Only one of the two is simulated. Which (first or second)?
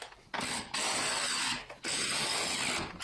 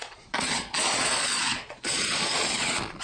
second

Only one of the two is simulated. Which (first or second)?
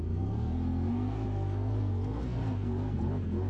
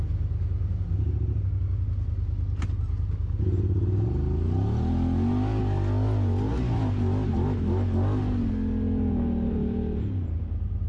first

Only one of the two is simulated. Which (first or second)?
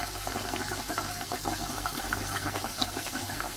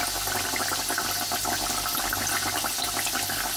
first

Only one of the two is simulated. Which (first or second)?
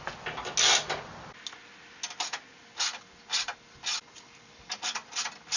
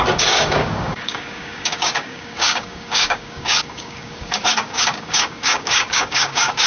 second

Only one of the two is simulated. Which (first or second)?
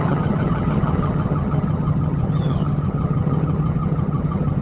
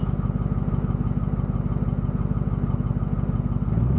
first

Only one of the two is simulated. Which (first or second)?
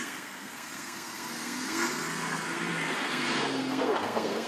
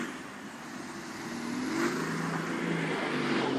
first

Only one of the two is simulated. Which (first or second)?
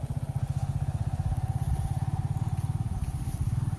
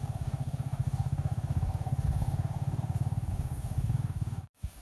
second